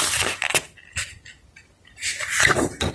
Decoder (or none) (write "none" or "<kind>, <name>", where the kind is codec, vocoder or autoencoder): none